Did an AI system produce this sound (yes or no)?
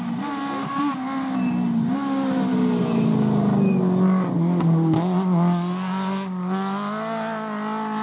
no